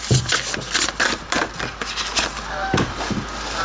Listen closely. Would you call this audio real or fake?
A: real